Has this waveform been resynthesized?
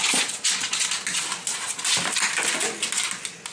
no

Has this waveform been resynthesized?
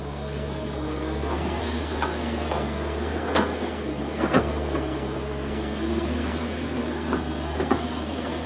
yes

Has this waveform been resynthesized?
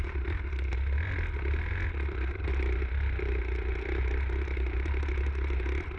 no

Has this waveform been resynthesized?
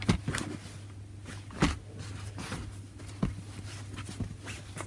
no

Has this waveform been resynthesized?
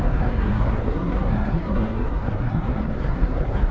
yes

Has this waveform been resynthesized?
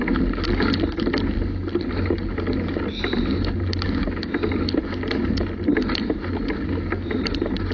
no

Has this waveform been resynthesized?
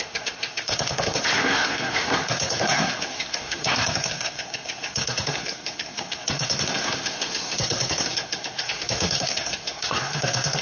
yes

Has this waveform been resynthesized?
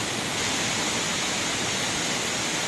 no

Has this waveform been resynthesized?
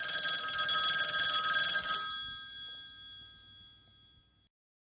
no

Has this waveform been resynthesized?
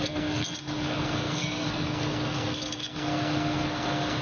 yes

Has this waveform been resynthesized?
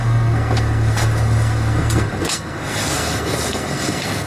yes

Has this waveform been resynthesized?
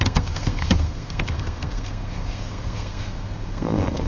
yes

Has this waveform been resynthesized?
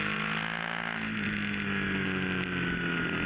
no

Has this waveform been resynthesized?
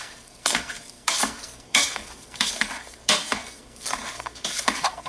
yes